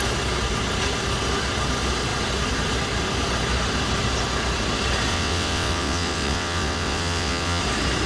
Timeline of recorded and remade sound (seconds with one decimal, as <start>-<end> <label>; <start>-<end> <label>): 0.0-5.1 recorded; 5.1-7.6 remade; 7.6-8.1 recorded